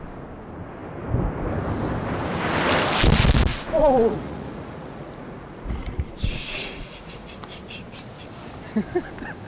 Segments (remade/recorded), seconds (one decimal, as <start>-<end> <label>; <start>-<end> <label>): 0.0-3.5 recorded; 3.5-7.3 remade; 7.3-9.5 recorded